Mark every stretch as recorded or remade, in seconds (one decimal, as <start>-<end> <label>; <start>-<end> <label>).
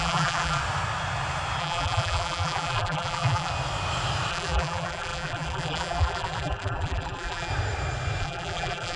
0.0-0.6 remade; 0.6-1.6 recorded; 1.6-3.5 remade; 3.5-4.3 recorded; 4.3-7.5 remade; 7.5-8.2 recorded; 8.2-9.0 remade